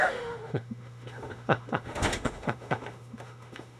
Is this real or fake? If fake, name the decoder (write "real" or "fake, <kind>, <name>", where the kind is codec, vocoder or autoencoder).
fake, autoencoder, DAC-VAE